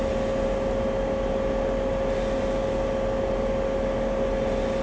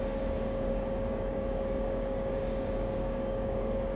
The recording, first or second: first